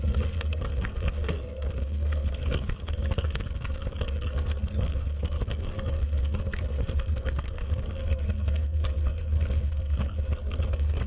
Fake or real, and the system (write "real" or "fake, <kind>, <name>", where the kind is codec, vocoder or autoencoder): fake, codec, SNAC